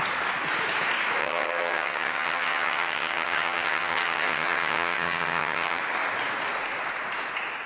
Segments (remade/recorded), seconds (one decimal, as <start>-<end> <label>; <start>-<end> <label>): 0.0-1.2 recorded; 1.2-5.8 remade; 5.8-7.7 recorded